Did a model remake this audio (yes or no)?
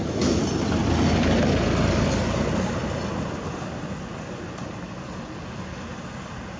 no